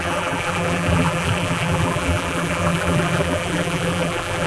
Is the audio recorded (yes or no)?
no